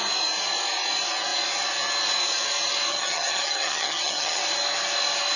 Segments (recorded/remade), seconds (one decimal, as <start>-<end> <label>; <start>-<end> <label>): 0.0-2.9 recorded; 2.9-4.4 remade; 4.4-5.4 recorded